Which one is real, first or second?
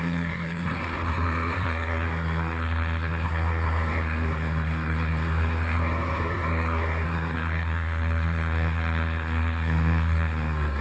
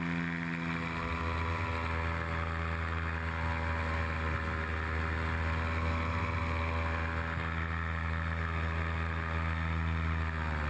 second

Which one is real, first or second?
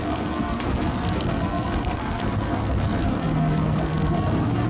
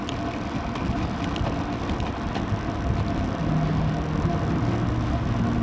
second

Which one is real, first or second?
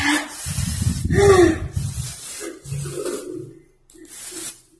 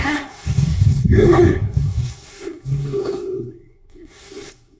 first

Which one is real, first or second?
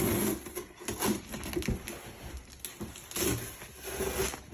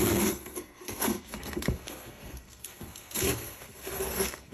first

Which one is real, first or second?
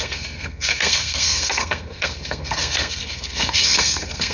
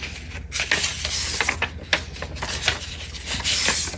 second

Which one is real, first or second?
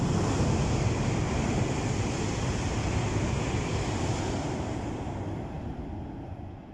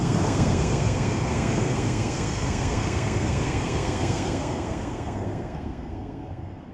first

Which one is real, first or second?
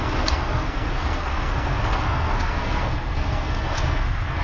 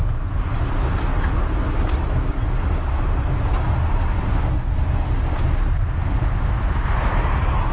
second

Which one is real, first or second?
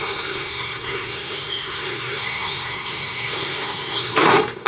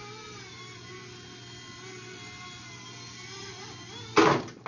second